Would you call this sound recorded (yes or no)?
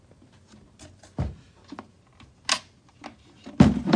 yes